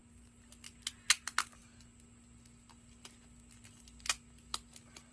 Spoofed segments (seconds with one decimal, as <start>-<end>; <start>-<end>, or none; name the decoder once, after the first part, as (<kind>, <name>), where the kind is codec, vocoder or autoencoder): none

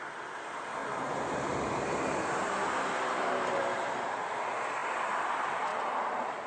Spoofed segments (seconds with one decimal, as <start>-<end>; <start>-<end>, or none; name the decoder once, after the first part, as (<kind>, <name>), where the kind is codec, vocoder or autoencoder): 0.8-4.2 (vocoder, BigVGAN v2); 5.7-6.5

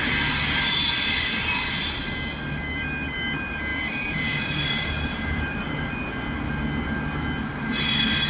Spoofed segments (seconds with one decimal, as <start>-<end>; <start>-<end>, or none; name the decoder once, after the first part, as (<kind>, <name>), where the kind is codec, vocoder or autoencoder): 3.7-5.9 (vocoder, BigVGAN v2)

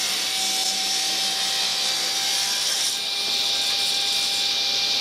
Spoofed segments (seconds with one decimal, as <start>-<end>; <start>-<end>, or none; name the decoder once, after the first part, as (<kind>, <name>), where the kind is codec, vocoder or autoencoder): 0.6-1.2 (vocoder, BigVGAN v2)

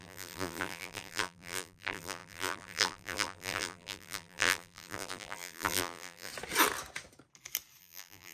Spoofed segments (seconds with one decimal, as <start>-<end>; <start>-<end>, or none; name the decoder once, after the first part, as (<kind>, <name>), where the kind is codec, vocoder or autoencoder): 0.0-6.3 (vocoder, BigVGAN v2); 7.8-8.3